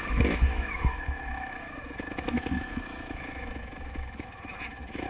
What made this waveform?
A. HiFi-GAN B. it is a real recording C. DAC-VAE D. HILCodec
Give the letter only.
C